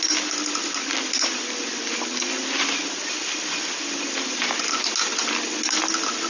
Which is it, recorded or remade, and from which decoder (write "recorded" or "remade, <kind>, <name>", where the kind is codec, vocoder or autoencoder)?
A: recorded